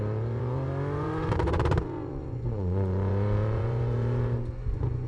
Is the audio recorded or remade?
remade